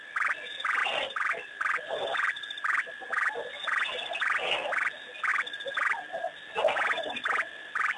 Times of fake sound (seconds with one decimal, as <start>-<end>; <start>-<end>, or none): none